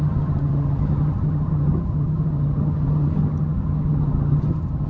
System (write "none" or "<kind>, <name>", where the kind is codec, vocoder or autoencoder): vocoder, HiFi-GAN